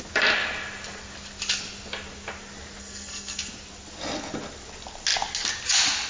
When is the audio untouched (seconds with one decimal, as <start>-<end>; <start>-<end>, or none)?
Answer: 0.0-2.8; 3.5-6.1